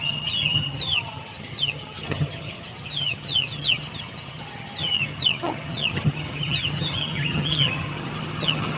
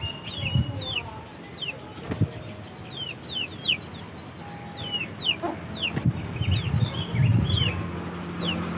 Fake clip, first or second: first